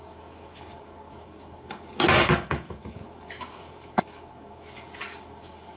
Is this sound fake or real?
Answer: fake